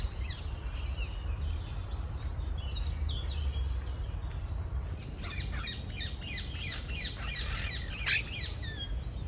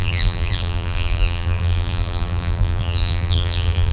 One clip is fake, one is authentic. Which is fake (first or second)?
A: second